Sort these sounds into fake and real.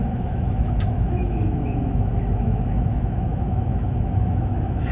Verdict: fake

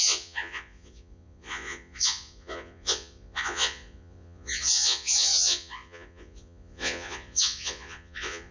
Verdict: fake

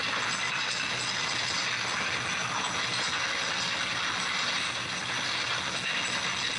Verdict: real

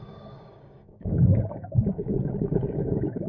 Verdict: fake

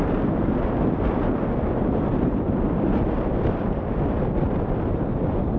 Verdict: real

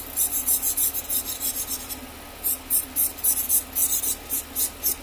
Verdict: real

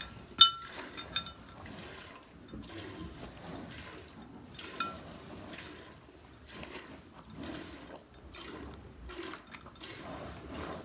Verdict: real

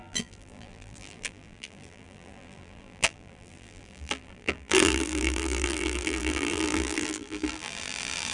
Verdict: fake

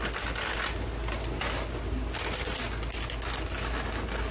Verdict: real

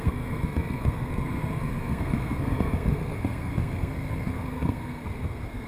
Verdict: fake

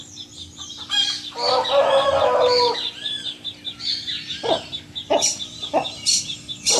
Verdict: fake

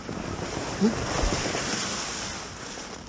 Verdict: real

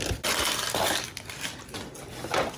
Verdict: real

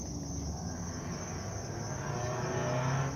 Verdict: real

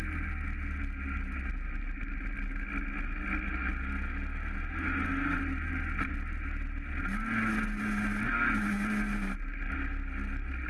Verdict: real